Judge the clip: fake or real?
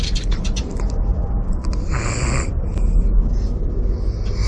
real